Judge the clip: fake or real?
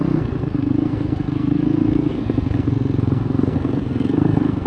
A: fake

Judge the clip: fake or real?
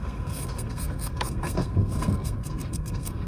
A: fake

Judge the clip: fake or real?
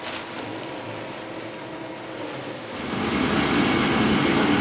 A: real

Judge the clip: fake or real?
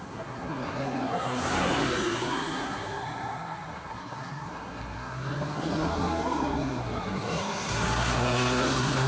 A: fake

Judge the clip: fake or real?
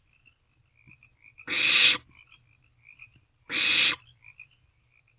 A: real